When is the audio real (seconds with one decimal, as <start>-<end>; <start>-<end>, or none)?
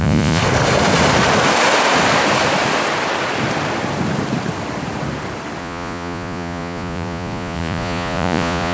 0.4-5.6